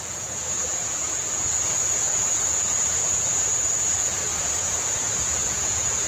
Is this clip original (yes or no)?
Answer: no